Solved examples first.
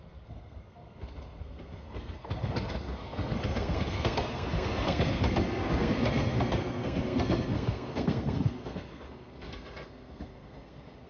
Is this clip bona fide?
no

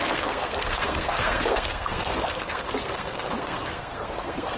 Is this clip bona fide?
no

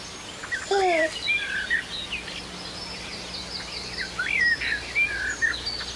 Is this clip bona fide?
yes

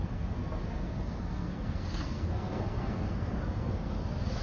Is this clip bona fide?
no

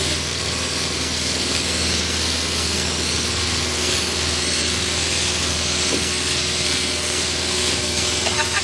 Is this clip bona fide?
no